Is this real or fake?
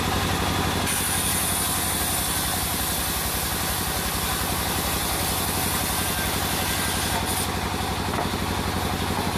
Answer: real